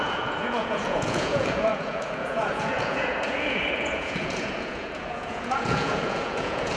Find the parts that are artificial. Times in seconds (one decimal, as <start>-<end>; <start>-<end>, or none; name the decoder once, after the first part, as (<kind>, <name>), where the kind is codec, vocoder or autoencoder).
0.0-6.8 (vocoder, Vocos)